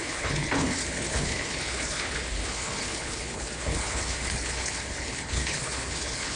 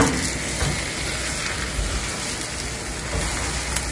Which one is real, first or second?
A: second